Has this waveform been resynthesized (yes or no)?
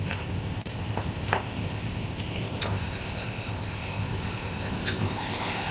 yes